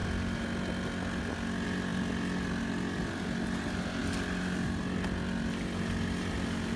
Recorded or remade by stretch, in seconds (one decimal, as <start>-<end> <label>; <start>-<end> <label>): 0.0-6.8 recorded